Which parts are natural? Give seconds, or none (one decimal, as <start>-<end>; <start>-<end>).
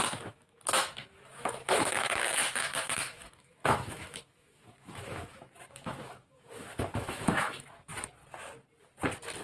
7.9-9.4